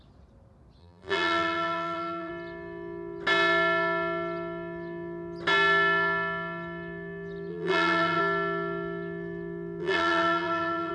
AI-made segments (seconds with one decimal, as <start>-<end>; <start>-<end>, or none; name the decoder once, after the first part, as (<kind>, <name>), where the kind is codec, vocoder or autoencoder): 0.8-2.3 (vocoder, BigVGAN v2); 7.5-8.2; 9.8-10.9